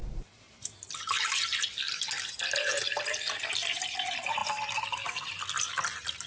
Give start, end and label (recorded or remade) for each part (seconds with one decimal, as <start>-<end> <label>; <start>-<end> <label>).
0.0-6.3 recorded